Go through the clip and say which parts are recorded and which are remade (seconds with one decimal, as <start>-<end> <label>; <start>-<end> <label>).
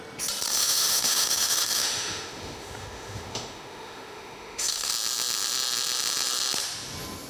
0.0-0.5 recorded; 0.5-4.9 remade; 4.9-7.3 recorded